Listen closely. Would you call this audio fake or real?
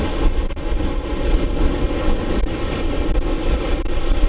real